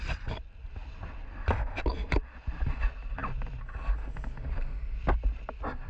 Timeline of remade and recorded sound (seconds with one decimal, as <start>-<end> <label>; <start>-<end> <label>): 0.0-5.9 recorded